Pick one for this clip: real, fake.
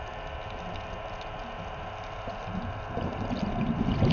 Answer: real